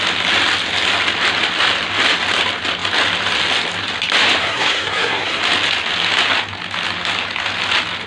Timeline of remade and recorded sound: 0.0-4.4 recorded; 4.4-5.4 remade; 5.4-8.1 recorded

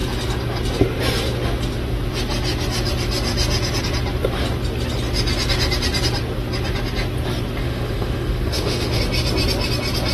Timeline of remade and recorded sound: 0.0-7.6 recorded; 7.6-9.0 remade; 9.0-10.1 recorded

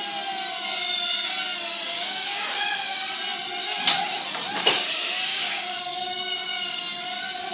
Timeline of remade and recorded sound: 0.0-1.9 recorded; 1.9-2.5 remade; 2.5-5.3 recorded; 5.3-7.0 remade; 7.0-7.5 recorded

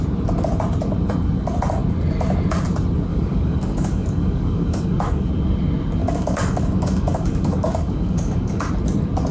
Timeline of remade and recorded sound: 0.0-3.1 recorded; 3.1-5.3 remade; 5.3-6.0 recorded; 6.0-8.7 remade; 8.7-9.3 recorded

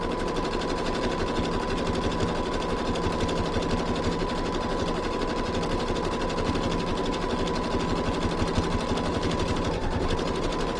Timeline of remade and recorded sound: 0.0-9.1 recorded; 9.1-10.8 remade

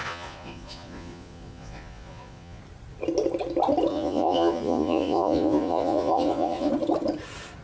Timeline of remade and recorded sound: 0.0-2.6 remade; 2.6-3.9 recorded; 3.9-6.7 remade; 6.7-7.6 recorded

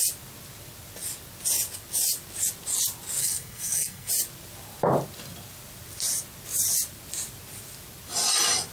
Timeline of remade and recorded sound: 0.0-3.2 recorded; 3.2-4.1 remade; 4.1-8.7 recorded

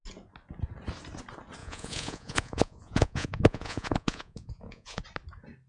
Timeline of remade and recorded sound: 0.0-1.6 recorded; 1.6-5.0 remade; 5.0-5.7 recorded